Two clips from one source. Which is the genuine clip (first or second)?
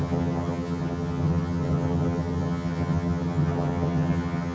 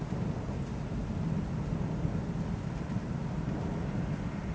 second